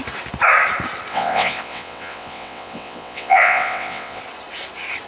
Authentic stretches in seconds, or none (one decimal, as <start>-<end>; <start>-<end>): 0.0-1.1; 4.2-5.1